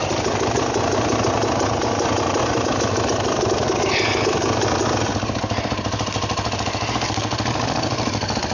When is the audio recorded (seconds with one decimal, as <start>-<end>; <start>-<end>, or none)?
0.0-8.5